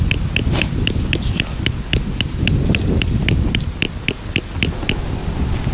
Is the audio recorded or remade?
recorded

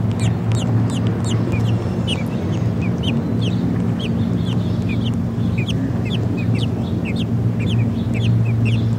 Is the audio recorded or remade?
recorded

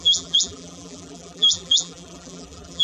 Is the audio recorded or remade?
remade